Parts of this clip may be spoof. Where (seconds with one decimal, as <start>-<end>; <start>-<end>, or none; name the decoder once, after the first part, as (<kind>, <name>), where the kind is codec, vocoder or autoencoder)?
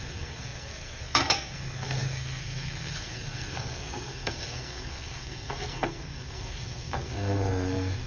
0.0-8.1 (codec, SNAC)